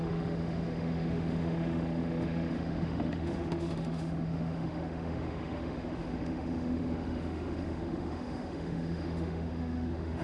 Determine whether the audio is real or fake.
fake